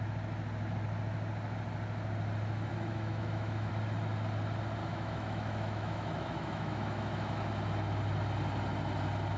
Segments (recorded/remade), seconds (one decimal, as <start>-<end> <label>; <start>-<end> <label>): 0.0-2.7 recorded; 2.7-3.7 remade; 3.7-4.8 recorded; 4.8-7.4 remade; 7.4-9.4 recorded